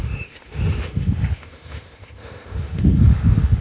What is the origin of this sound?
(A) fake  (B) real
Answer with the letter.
A